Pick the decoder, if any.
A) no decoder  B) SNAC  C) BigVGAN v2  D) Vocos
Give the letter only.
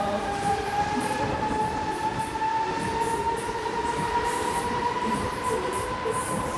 C